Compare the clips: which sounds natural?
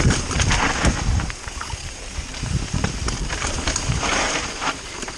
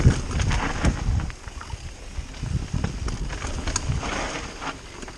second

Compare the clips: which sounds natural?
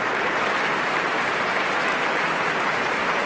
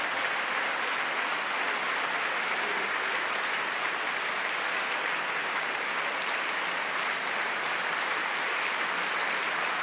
second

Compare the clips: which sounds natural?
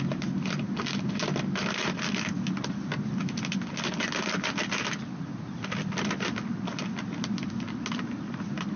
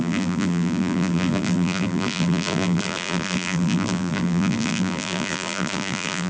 first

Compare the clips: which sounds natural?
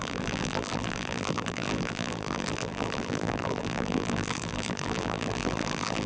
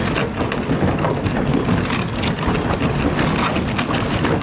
second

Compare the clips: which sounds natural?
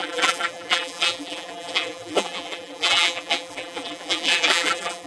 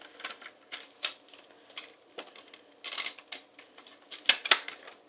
second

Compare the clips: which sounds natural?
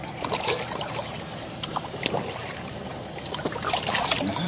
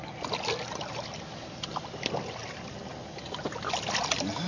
second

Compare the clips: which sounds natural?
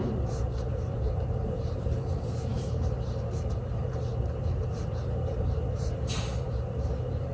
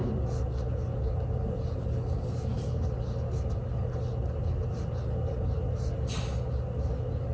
second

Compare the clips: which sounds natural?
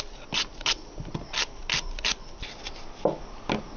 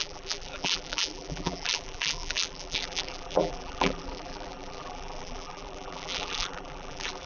first